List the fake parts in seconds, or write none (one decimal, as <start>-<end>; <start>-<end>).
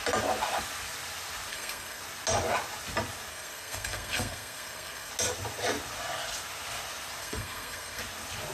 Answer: 1.5-2.0; 3.3-5.1; 7.2-8.0